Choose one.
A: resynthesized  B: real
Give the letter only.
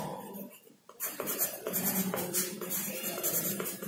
A